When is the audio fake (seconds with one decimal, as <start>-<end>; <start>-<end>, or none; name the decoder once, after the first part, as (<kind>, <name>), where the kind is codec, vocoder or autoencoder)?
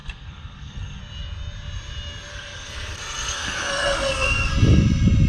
0.0-1.0 (codec, SNAC); 2.3-4.5